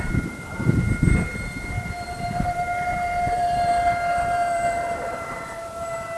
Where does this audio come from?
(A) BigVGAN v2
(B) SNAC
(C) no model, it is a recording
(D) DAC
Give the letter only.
A